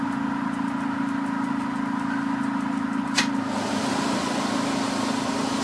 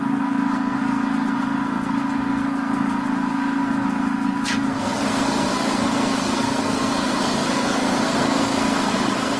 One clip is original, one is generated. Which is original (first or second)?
first